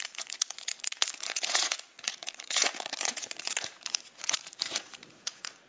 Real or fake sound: fake